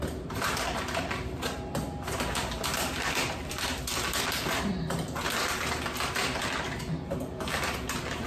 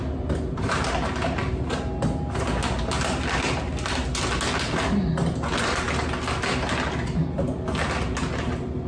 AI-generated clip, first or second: first